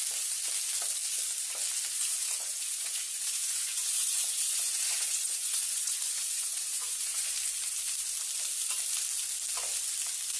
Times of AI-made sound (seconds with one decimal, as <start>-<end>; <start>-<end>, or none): 2.2-7.3